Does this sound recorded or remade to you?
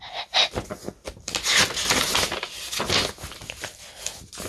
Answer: recorded